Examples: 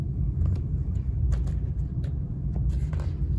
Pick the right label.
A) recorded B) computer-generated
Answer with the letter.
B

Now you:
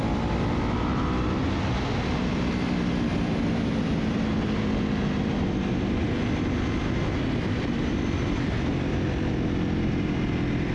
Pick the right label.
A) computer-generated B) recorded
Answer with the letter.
A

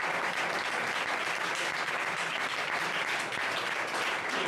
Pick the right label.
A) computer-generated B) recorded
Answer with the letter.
A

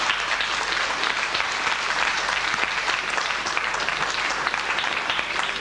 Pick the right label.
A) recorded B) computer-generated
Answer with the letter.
B